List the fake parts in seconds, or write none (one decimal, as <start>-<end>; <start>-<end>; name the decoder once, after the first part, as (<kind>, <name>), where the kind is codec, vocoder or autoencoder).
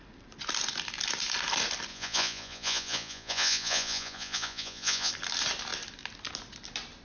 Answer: 1.9-5.1 (vocoder, Vocos)